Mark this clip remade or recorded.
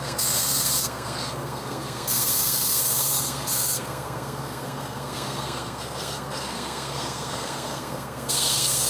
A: remade